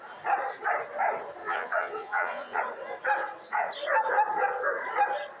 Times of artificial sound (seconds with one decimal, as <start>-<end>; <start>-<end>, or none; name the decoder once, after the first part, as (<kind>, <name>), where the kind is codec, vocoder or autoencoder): 1.4-2.6 (vocoder, Vocos)